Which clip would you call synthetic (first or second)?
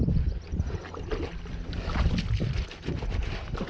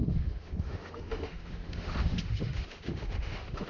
second